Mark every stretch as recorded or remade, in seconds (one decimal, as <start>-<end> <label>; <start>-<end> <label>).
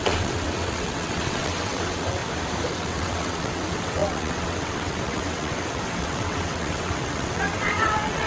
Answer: 0.0-2.2 remade; 2.2-2.7 recorded; 2.7-8.3 remade